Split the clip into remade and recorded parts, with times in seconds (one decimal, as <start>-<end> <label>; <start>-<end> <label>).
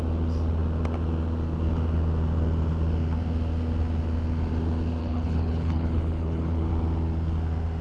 0.0-5.0 recorded; 5.0-6.7 remade; 6.7-7.8 recorded